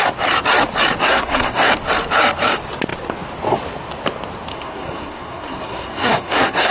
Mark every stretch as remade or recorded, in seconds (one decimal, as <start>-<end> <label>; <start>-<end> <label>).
0.0-1.0 recorded; 1.0-1.7 remade; 1.7-4.5 recorded; 4.5-6.7 remade